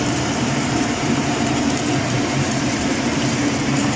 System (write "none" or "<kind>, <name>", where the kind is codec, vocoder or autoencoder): vocoder, BigVGAN v2